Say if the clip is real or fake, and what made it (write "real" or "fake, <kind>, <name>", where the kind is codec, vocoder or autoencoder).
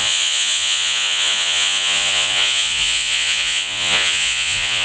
fake, vocoder, Vocos